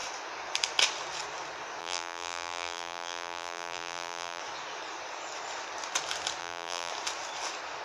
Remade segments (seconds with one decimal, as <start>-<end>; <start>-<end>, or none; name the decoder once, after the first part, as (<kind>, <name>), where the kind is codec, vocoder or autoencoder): 1.8-4.4 (vocoder, BigVGAN v2); 6.4-6.9